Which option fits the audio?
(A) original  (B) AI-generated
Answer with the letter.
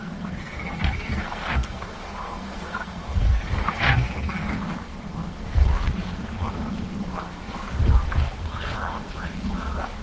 B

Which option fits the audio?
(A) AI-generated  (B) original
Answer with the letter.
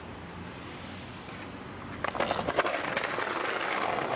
B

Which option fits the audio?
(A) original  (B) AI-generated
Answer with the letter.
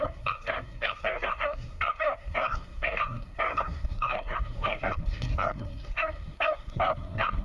B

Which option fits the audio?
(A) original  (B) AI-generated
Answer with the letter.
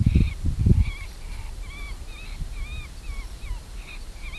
A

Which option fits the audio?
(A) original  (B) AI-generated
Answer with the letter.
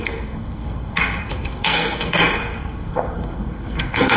B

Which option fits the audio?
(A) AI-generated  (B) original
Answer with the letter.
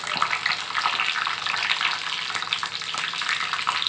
B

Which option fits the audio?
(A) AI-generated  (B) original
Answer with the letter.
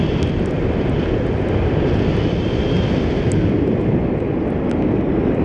B